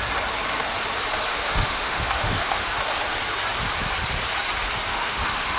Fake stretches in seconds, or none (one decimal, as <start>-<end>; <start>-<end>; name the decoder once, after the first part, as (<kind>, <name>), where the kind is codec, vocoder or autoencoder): 1.3-2.7 (autoencoder, DAC-VAE); 4.9-5.6